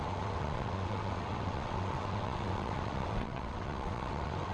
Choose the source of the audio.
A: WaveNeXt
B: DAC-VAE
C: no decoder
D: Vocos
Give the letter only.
A